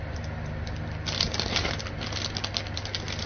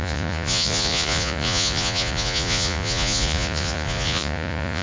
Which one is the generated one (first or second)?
second